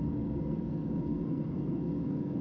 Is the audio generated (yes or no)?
yes